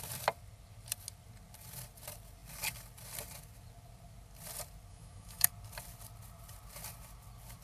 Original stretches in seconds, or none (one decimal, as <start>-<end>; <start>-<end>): 0.0-4.9; 5.5-7.6